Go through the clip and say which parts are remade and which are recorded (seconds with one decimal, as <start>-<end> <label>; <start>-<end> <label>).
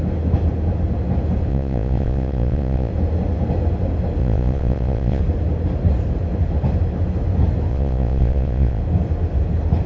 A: 0.0-1.5 recorded; 1.5-2.9 remade; 2.9-4.2 recorded; 4.2-5.2 remade; 5.2-7.7 recorded; 7.7-8.8 remade; 8.8-9.9 recorded